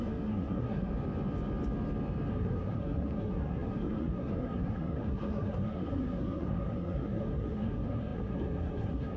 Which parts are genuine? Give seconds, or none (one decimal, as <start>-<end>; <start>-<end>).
0.9-2.3

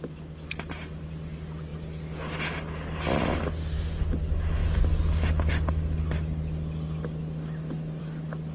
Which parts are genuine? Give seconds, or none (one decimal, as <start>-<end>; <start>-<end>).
0.0-8.5

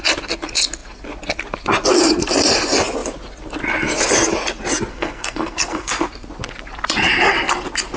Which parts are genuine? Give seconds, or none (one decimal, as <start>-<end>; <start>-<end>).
0.0-4.9; 5.9-8.0